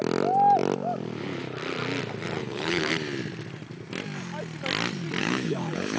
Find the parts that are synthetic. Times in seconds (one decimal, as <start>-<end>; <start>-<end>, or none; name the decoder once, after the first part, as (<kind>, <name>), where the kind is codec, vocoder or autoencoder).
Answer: 2.4-2.9 (codec, HILCodec); 5.2-6.0